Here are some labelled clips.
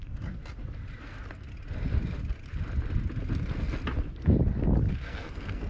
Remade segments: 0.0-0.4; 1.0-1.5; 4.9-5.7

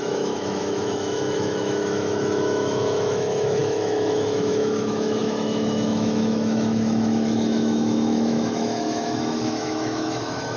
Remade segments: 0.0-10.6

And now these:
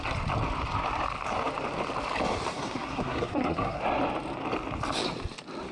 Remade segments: 2.5-3.8

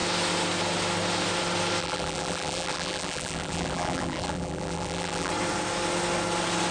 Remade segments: 1.8-5.3